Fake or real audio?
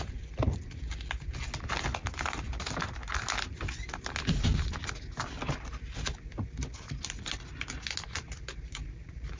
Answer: real